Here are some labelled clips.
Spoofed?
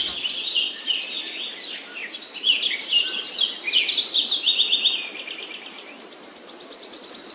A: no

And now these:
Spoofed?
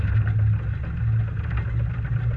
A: no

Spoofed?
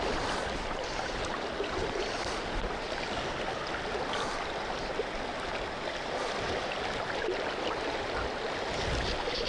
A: no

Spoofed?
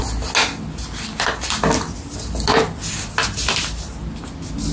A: no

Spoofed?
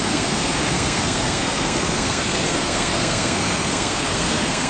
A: yes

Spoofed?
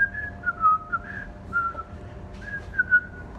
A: no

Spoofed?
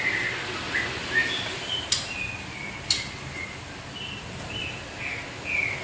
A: no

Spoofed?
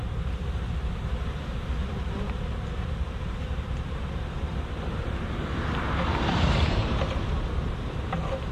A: yes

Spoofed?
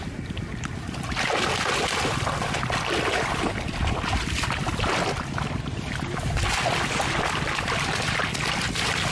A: no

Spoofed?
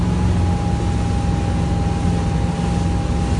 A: no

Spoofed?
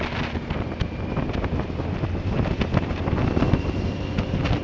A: no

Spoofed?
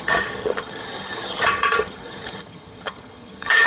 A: yes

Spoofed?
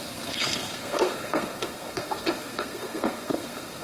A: yes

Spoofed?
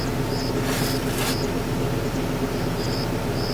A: no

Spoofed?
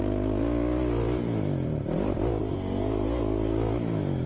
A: no